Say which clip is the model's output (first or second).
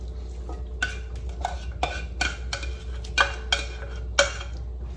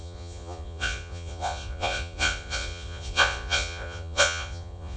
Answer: second